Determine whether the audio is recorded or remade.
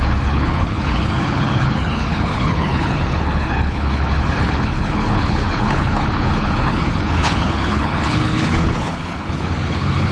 remade